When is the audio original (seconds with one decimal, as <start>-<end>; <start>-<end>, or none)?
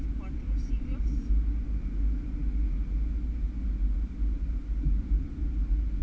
0.0-6.0